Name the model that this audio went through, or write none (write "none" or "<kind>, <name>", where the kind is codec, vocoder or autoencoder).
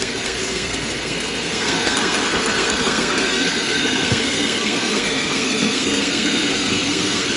codec, SNAC